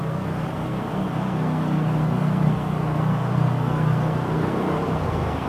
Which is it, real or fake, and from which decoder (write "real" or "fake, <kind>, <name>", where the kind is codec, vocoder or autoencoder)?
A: fake, codec, SNAC